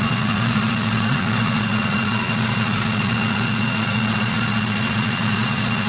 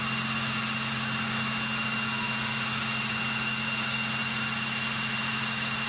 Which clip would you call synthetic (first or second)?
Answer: first